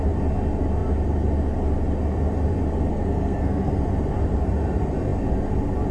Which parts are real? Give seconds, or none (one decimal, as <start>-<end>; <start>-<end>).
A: 0.0-2.9; 3.7-5.9